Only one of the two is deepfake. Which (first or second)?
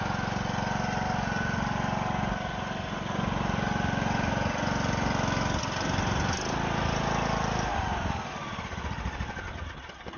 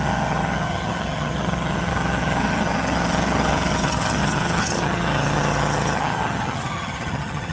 second